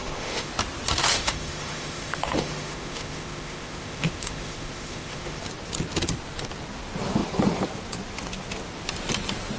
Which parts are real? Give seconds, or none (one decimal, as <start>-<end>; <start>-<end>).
0.5-1.1; 5.4-9.6